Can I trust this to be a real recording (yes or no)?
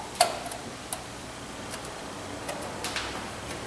yes